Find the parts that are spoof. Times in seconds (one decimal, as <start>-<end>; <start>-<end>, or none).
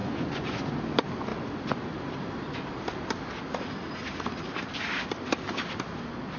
0.0-0.6